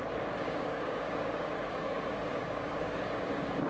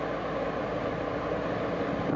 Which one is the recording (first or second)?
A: second